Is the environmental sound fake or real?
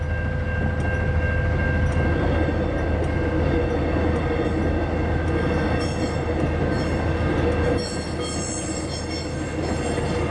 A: real